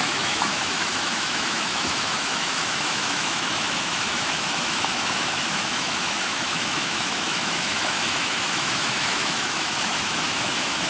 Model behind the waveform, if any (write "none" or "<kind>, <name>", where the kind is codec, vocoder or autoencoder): autoencoder, DAC-VAE